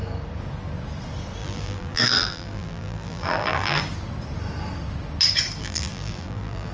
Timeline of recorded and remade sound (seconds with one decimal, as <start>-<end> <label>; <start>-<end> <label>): 0.0-1.4 recorded; 1.4-3.8 remade; 3.8-5.6 recorded; 5.6-6.7 remade